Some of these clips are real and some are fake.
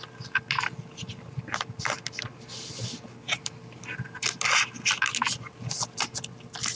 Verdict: real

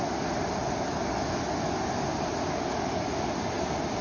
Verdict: real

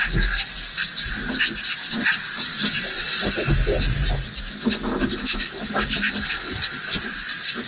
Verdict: real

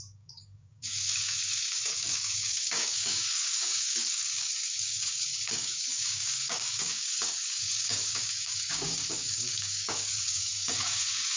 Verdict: fake